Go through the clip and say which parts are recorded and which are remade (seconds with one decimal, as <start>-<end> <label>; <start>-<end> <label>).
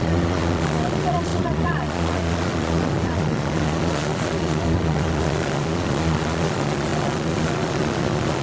0.0-8.4 remade